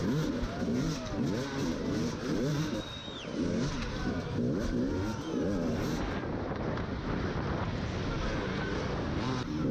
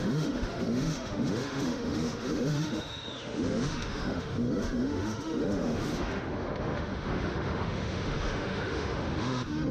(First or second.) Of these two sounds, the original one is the first